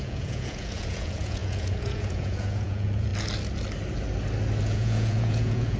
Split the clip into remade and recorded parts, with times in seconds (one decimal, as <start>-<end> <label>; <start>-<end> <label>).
0.0-3.1 remade; 3.1-4.6 recorded; 4.6-5.8 remade